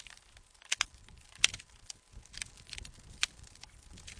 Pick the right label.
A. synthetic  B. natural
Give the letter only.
B